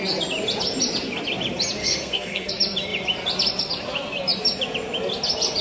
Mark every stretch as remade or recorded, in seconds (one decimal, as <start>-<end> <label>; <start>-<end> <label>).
0.0-1.8 recorded; 1.8-2.5 remade; 2.5-5.6 recorded